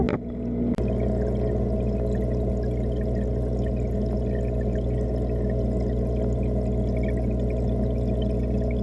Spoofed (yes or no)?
no